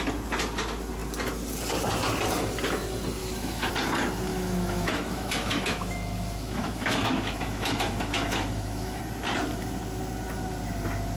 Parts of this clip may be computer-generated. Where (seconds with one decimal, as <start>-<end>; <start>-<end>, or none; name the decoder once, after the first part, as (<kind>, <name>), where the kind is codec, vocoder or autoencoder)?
3.2-3.7 (autoencoder, DAC-VAE); 4.3-9.0